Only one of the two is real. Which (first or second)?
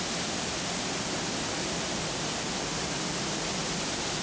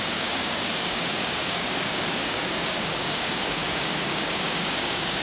first